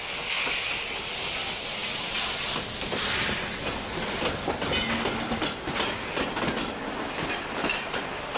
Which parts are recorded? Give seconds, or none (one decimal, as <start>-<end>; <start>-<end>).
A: 0.0-8.4